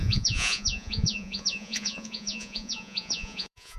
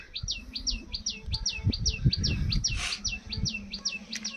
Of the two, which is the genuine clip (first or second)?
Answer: second